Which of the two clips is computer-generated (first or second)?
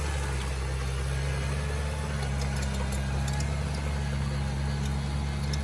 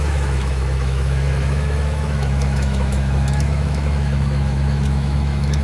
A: second